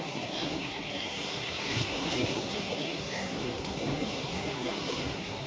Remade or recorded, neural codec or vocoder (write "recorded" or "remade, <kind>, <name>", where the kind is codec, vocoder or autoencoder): remade, codec, SNAC